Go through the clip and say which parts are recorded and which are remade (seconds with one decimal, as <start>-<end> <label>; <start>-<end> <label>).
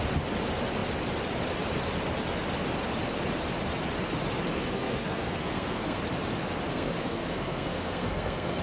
0.0-4.5 recorded; 4.5-6.0 remade; 6.0-6.7 recorded; 6.7-8.6 remade